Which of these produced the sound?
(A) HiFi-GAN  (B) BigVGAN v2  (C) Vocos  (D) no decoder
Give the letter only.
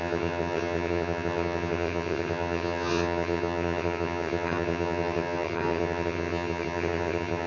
A